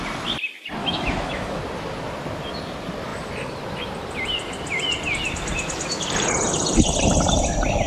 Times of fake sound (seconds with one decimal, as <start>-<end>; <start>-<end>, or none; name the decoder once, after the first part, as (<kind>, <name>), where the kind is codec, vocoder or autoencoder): 0.8-1.6 (autoencoder, DAC-VAE)

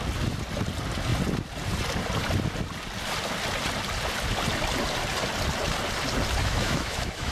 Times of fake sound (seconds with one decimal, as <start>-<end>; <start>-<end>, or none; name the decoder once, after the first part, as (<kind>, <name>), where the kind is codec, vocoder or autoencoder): 6.4-7.3 (autoencoder, DAC-VAE)

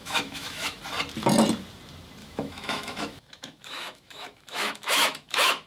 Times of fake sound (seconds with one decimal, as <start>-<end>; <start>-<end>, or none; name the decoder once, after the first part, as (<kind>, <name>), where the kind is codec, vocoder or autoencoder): 0.0-0.8 (autoencoder, DAC-VAE); 2.2-5.7

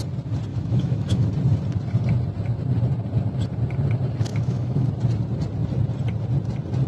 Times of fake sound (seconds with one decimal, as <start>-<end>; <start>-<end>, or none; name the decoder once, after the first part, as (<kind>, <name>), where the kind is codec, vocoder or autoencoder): 0.5-1.3 (autoencoder, DAC-VAE); 4.3-4.9

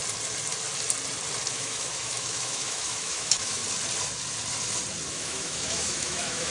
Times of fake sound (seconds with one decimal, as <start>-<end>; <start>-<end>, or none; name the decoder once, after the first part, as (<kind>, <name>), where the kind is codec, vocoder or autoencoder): 1.5-3.6 (autoencoder, DAC-VAE); 5.1-6.5